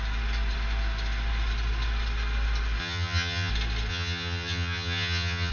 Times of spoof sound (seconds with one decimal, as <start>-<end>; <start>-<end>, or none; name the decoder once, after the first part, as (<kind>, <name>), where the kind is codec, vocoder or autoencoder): 2.8-3.5 (vocoder, HiFi-GAN); 3.9-5.5